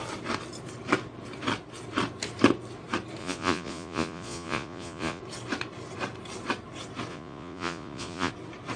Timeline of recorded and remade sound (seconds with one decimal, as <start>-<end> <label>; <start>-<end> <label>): 0.0-3.2 recorded; 3.2-5.2 remade; 5.2-7.1 recorded; 7.1-8.3 remade; 8.3-8.8 recorded

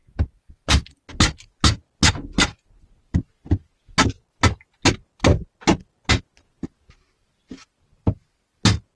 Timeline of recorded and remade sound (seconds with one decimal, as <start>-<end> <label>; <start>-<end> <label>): 0.0-8.9 recorded

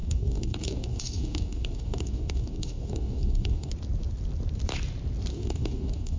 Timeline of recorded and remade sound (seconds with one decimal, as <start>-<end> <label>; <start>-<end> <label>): 0.0-3.7 remade; 3.7-5.3 recorded; 5.3-6.2 remade

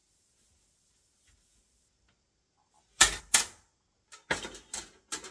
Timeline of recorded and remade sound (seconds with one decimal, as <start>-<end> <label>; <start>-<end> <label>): 0.0-5.3 recorded